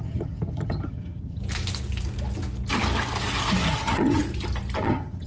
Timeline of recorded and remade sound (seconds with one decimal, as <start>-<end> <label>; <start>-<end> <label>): 0.0-1.4 remade; 1.4-3.7 recorded; 3.7-4.2 remade; 4.2-4.8 recorded; 4.8-5.3 remade

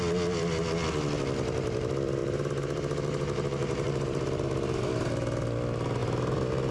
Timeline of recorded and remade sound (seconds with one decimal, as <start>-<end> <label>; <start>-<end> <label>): 0.0-2.2 recorded; 2.2-5.1 remade; 5.1-6.0 recorded; 6.0-6.7 remade

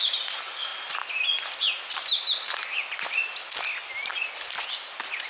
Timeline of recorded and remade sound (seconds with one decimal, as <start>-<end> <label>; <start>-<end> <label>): 0.0-5.3 recorded

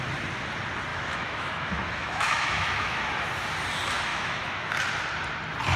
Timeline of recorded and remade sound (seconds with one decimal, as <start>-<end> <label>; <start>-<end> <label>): 0.0-0.9 recorded; 0.9-3.3 remade; 3.3-4.1 recorded; 4.1-4.7 remade; 4.7-5.8 recorded

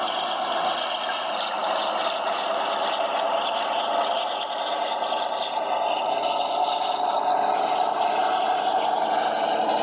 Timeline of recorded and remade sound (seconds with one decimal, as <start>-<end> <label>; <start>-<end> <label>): 0.0-9.8 recorded

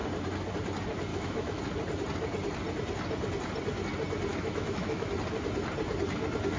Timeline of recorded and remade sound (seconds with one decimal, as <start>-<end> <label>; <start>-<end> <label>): 0.0-1.1 recorded; 1.1-1.6 remade; 1.6-4.3 recorded; 4.3-5.1 remade; 5.1-6.6 recorded

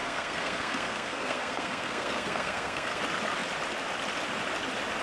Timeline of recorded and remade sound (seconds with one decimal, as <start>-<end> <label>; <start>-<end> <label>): 0.0-3.0 remade; 3.0-5.0 recorded

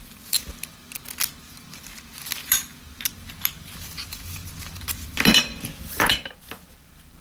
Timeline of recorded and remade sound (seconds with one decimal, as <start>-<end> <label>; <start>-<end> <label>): 0.0-7.2 recorded